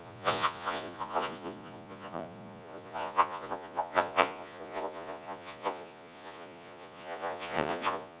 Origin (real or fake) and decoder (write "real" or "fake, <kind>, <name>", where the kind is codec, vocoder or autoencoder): fake, vocoder, Vocos